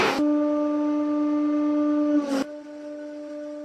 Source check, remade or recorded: recorded